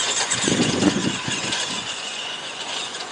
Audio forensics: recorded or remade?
remade